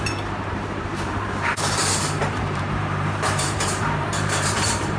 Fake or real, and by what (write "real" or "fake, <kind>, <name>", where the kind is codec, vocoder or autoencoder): fake, vocoder, BigVGAN v2